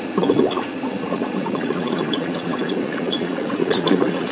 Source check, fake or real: fake